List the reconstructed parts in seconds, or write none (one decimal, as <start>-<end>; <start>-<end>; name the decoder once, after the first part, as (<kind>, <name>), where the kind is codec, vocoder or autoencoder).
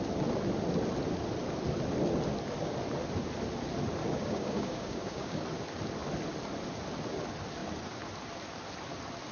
4.1-5.4 (codec, DAC)